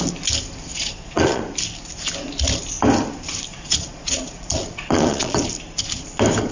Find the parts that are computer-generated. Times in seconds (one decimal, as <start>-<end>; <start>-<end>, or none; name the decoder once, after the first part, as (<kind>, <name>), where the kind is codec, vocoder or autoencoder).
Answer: 0.7-1.4 (vocoder, Vocos); 3.5-5.4

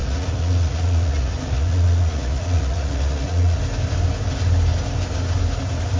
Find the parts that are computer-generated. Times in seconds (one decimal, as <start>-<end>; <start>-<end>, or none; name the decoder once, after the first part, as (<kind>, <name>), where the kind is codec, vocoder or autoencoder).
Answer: 0.0-3.6 (vocoder, Vocos)

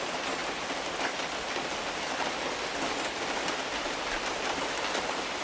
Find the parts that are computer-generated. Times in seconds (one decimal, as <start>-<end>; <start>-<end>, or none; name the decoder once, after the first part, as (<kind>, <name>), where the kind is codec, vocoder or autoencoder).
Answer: none

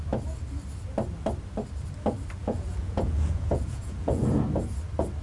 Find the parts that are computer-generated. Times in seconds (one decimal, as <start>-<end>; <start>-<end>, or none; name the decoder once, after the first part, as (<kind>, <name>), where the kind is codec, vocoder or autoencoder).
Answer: 2.4-4.3 (vocoder, Vocos)

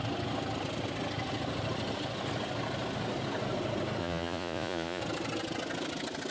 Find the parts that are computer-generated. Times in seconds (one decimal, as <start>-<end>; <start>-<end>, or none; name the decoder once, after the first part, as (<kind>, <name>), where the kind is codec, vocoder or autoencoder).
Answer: 4.0-5.0 (vocoder, Vocos)